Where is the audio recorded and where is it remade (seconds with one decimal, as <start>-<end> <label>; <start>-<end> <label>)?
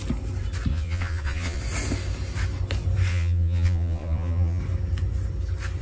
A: 0.0-0.7 recorded; 0.7-1.6 remade; 1.6-3.1 recorded; 3.1-4.6 remade; 4.6-5.8 recorded